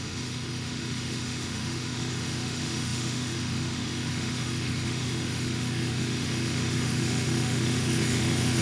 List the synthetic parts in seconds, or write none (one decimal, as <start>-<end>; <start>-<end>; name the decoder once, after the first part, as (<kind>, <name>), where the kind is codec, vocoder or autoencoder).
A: 0.0-8.6 (autoencoder, DAC-VAE)